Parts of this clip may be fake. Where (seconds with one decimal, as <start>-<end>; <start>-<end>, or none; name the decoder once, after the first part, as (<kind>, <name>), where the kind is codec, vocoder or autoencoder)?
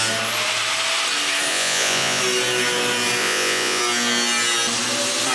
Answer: 1.5-2.2 (vocoder, Vocos); 3.2-3.8